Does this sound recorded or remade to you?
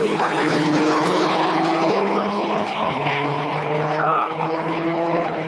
remade